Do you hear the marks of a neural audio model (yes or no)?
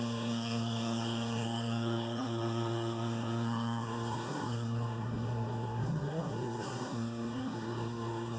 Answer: yes